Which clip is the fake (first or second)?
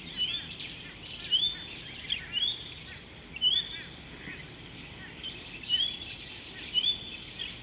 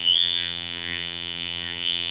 second